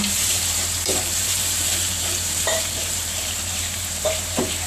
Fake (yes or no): yes